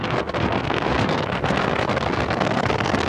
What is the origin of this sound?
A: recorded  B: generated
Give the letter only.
B